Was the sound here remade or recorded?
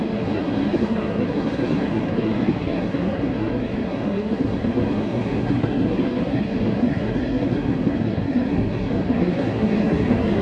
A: remade